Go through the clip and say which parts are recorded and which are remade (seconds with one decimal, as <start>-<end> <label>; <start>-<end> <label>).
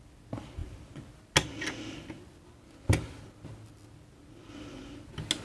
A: 0.0-5.4 recorded